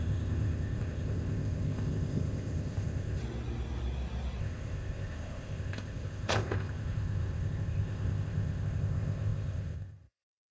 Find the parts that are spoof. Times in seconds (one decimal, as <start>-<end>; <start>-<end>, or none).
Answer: 0.0-3.2; 4.4-10.5